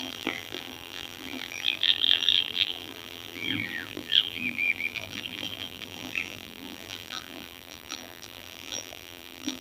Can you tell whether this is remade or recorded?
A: remade